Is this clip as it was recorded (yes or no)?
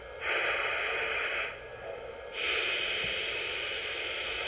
yes